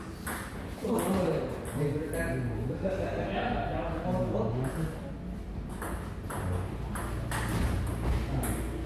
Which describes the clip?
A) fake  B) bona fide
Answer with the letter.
B